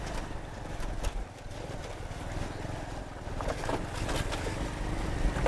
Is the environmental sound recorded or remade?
recorded